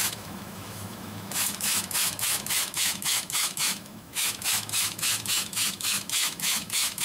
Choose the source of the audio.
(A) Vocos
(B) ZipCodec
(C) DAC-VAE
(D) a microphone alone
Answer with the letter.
C